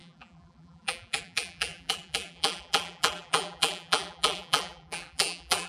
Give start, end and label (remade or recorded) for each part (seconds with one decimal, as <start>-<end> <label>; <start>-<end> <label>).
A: 0.0-5.7 remade